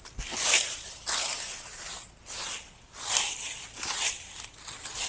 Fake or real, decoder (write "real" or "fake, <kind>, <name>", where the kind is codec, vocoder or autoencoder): real